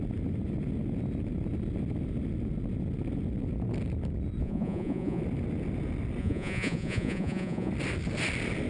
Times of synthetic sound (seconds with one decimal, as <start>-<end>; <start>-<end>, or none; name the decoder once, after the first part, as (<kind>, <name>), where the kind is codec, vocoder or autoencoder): 4.4-5.2 (vocoder, Vocos); 6.2-7.7